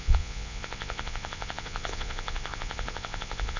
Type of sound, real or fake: fake